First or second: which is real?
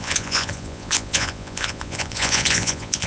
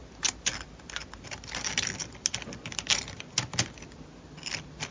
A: second